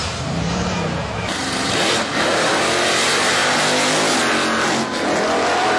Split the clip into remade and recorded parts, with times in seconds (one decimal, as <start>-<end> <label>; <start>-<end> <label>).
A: 0.0-3.4 remade; 3.4-5.8 recorded

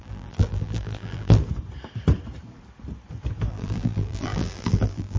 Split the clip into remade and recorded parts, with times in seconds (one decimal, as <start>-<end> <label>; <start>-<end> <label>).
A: 0.0-1.4 remade; 1.4-3.5 recorded; 3.5-5.2 remade

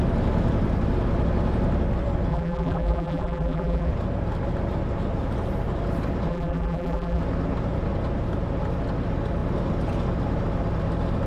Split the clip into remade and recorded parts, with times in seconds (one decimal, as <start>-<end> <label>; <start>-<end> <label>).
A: 0.0-2.3 recorded; 2.3-3.9 remade; 3.9-6.3 recorded; 6.3-7.2 remade; 7.2-11.3 recorded